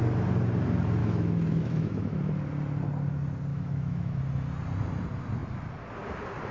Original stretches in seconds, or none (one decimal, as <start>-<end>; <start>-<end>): 0.0-1.0; 2.3-3.5; 4.2-6.5